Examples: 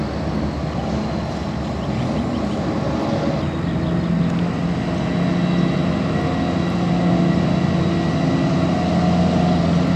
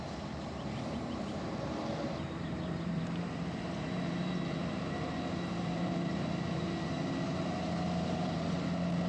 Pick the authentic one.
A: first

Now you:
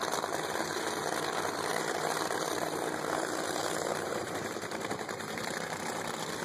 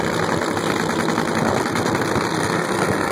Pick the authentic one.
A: second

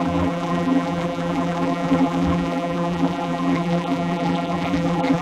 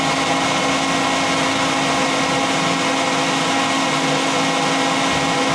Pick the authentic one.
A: second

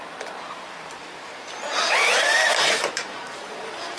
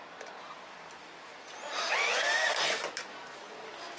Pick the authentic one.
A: second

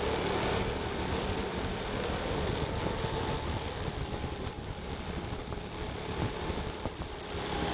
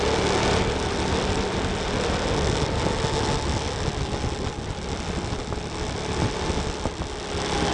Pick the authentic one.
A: second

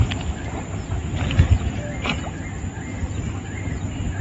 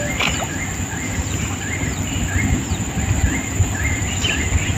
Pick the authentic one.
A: first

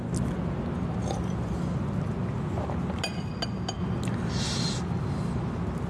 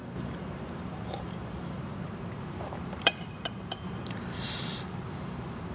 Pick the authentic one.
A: first